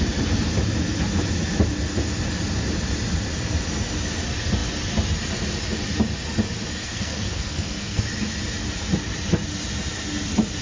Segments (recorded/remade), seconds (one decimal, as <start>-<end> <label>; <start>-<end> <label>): 0.0-6.8 recorded; 6.8-8.0 remade; 8.0-10.6 recorded